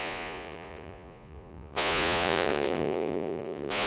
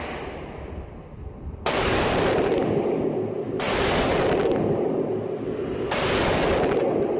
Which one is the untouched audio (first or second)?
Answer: second